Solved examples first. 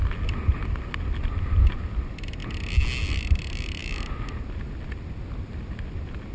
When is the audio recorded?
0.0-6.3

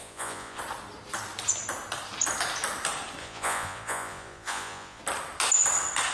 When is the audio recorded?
0.6-3.2; 5.0-6.1